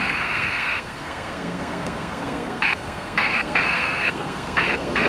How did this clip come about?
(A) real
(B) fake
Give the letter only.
B